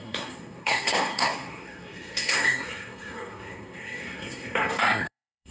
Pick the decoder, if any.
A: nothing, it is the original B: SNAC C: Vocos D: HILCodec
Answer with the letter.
B